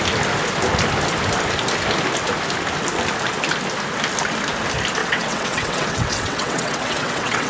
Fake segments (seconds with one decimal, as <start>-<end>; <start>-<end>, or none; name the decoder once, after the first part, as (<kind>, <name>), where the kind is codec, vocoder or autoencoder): 5.0-7.5 (vocoder, WaveNeXt)